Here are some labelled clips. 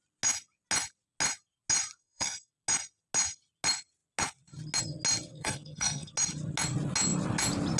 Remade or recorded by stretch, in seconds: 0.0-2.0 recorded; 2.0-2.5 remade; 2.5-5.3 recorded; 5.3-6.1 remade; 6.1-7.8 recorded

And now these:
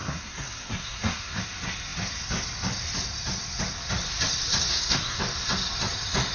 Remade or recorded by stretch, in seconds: 0.0-1.4 remade; 1.4-4.7 recorded; 4.7-5.2 remade; 5.2-6.3 recorded

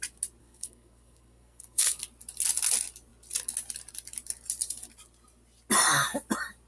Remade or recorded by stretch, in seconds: 0.0-0.4 recorded; 0.4-2.0 remade; 2.0-6.7 recorded

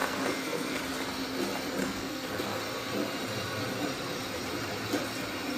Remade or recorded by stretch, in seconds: 0.0-0.8 remade; 0.8-1.8 recorded; 1.8-2.6 remade; 2.6-5.6 recorded

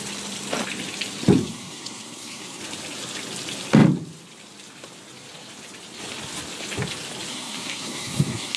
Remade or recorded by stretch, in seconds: 0.0-1.4 recorded; 1.4-2.6 remade; 2.6-7.3 recorded; 7.3-8.6 remade

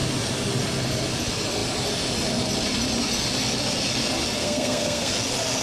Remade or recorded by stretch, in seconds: 0.0-4.4 recorded; 4.4-5.1 remade; 5.1-5.6 recorded

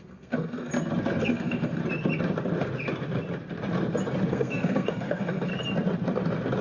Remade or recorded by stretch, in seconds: 0.0-0.7 remade; 0.7-1.2 recorded; 1.2-1.8 remade; 1.8-4.3 recorded; 4.3-5.5 remade; 5.5-6.6 recorded